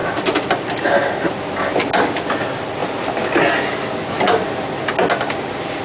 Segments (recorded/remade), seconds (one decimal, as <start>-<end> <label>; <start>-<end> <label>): 0.0-5.8 recorded